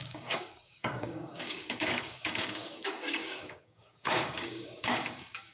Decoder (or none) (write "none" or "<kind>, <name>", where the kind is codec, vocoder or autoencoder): codec, DAC